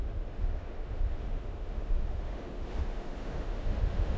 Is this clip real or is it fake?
fake